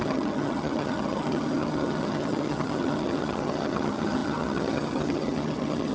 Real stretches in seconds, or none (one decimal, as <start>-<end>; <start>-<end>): none